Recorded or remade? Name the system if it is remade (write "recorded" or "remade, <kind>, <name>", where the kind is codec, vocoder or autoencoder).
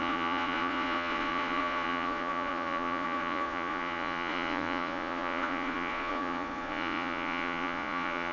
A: remade, vocoder, Vocos